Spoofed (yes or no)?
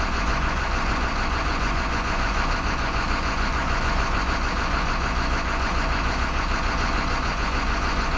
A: yes